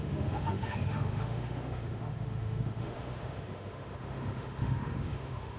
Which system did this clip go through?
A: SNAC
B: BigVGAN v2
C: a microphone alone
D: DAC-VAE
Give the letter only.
D